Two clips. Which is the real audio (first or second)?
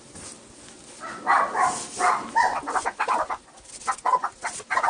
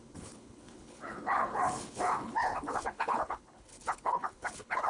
first